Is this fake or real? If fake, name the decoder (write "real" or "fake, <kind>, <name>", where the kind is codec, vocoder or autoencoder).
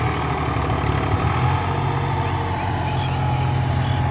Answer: real